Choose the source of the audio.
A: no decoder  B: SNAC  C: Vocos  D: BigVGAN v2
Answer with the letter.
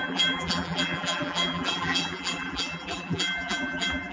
D